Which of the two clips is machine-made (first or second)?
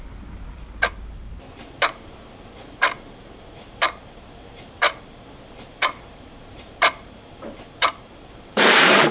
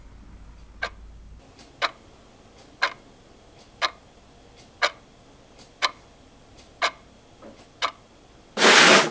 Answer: first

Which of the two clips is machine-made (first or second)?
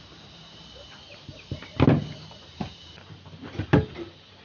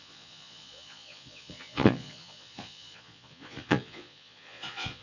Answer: second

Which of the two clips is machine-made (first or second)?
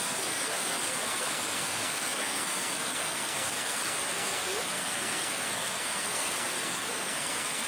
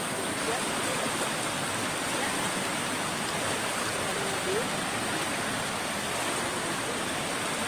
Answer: first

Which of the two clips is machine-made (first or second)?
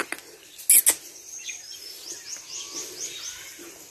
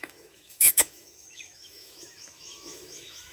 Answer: second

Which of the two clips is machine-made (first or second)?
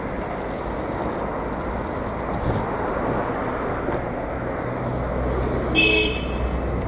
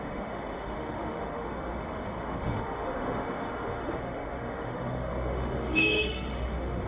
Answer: second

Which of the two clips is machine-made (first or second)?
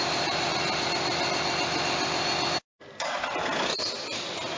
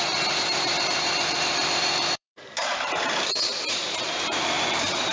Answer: second